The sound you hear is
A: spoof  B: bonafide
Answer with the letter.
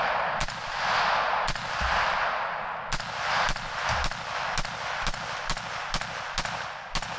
B